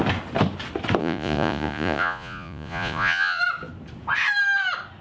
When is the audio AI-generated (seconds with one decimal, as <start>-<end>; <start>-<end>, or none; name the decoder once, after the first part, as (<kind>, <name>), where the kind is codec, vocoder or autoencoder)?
1.0-3.4 (vocoder, Vocos)